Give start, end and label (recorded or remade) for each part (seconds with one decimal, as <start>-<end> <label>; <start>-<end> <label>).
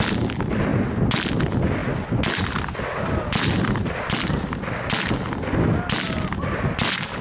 0.0-7.2 recorded